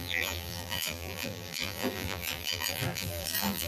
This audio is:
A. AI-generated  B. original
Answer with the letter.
A